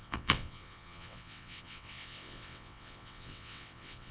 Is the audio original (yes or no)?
no